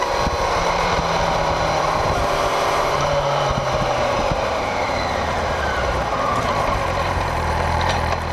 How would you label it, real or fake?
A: fake